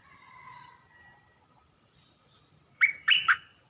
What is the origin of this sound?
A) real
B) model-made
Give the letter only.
B